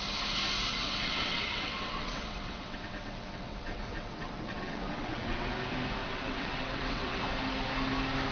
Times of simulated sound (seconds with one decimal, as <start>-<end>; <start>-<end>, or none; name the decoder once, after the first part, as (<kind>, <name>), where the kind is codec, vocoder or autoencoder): 0.7-5.5 (vocoder, WaveNeXt); 6.0-7.2